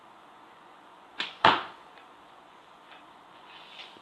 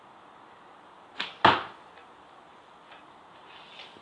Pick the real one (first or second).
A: second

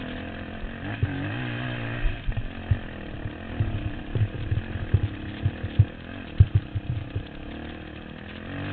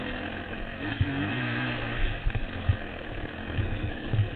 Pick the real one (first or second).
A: first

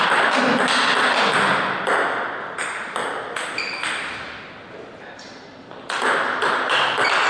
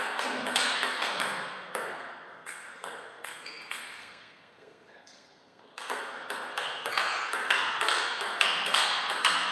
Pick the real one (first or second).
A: first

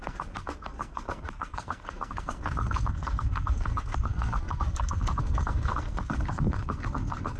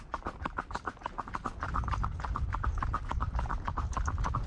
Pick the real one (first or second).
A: second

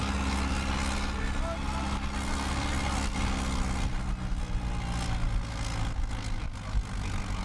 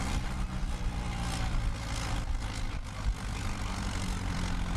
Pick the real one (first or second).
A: first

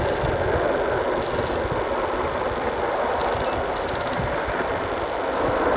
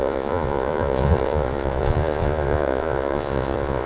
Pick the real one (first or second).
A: first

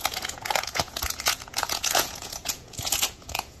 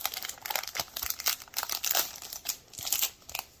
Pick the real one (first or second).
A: second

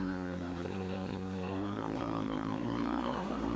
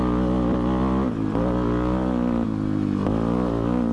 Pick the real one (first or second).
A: second